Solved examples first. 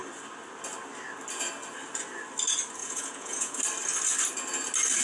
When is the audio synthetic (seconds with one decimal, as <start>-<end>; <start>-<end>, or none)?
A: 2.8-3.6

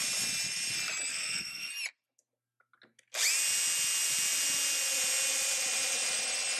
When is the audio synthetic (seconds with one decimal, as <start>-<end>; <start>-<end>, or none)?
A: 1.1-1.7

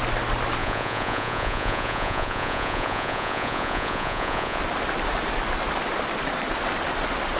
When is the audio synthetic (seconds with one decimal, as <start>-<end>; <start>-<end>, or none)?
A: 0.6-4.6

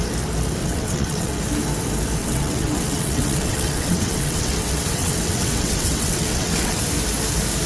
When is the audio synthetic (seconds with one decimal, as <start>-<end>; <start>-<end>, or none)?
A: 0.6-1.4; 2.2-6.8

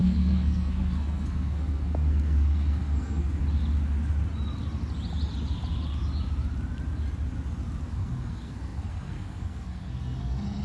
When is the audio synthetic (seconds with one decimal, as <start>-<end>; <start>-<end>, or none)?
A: 0.0-3.4; 7.9-10.6

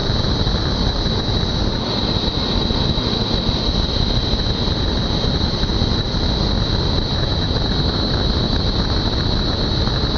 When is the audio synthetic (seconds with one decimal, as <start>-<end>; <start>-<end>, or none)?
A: none

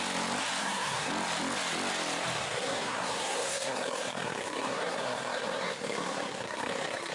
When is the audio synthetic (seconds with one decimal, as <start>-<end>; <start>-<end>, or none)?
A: 0.6-1.1; 2.4-7.1

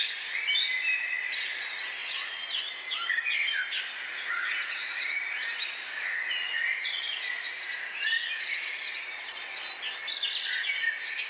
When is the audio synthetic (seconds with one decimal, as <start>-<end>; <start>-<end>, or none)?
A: 2.0-2.6; 4.1-7.8